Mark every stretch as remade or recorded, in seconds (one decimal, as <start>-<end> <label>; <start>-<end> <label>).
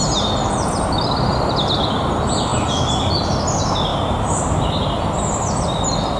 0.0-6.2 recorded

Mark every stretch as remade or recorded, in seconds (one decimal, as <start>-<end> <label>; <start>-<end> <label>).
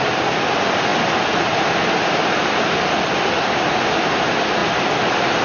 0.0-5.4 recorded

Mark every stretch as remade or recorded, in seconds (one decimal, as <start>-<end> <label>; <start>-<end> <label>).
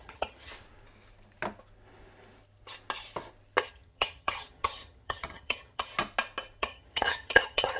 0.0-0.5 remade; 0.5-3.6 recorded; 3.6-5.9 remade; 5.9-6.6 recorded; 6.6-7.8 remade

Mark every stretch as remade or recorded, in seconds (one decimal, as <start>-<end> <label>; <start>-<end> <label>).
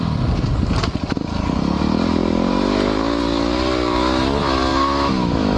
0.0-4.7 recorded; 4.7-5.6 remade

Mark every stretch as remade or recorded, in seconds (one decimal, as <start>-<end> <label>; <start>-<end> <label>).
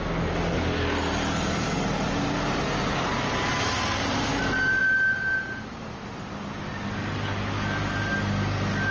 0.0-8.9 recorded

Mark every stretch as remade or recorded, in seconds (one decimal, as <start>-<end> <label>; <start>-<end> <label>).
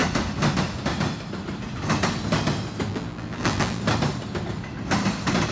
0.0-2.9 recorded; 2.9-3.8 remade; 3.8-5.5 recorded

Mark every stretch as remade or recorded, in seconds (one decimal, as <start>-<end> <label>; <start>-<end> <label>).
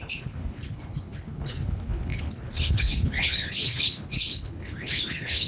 0.0-5.5 remade